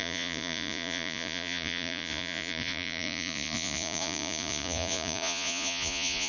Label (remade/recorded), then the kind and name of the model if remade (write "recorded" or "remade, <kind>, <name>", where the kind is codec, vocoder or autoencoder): remade, vocoder, Vocos